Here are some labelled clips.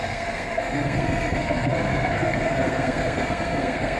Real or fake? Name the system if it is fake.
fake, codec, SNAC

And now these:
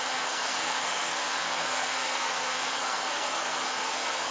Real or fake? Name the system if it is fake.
fake, codec, SNAC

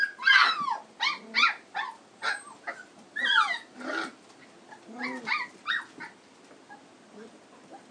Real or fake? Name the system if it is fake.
real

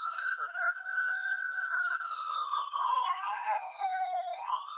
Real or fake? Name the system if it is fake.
fake, codec, SNAC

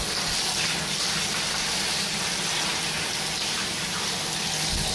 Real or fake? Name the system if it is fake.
real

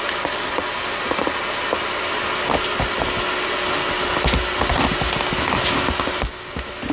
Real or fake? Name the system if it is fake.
real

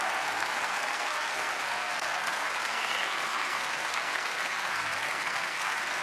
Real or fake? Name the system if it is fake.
fake, codec, SNAC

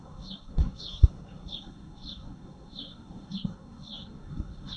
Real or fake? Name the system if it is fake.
fake, codec, SNAC